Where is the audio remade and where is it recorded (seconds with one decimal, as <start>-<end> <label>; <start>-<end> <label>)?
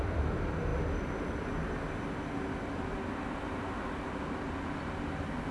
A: 0.0-5.5 recorded